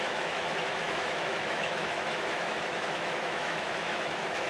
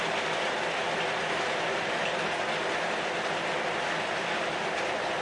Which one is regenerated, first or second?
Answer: first